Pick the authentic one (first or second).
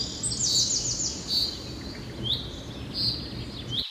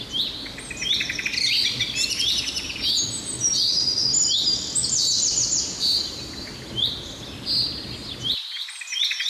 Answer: first